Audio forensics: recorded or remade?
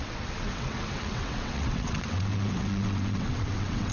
remade